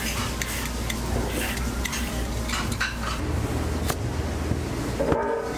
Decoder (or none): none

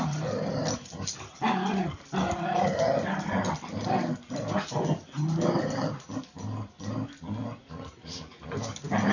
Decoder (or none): none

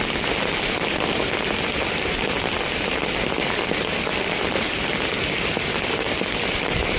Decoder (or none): none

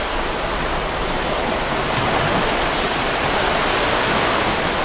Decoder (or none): none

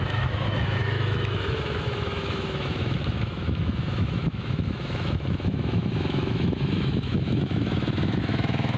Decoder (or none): autoencoder, DAC-VAE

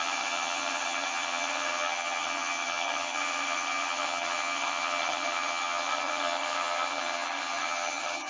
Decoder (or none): vocoder, HiFi-GAN